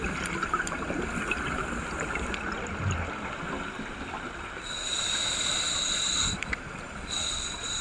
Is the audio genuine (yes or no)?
yes